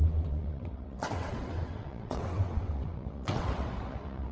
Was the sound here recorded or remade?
remade